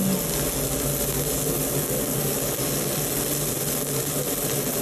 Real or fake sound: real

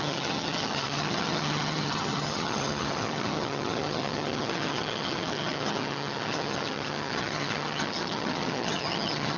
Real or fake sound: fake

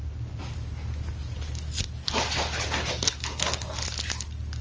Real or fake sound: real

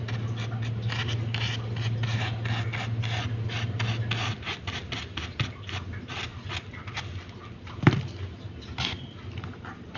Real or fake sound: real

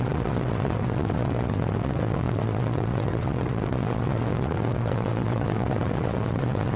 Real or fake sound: fake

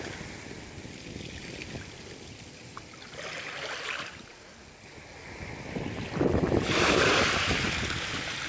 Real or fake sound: real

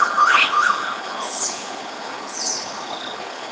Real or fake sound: fake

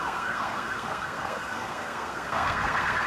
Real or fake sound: fake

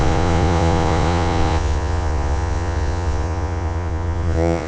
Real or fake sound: fake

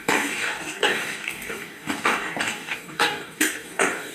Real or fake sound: fake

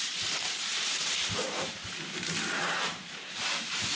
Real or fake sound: fake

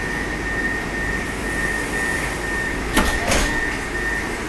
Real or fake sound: real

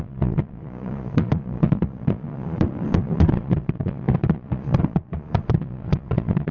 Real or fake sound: fake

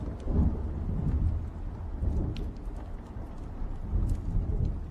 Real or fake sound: real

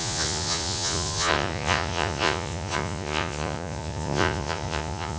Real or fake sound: fake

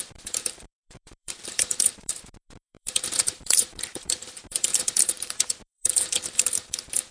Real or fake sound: fake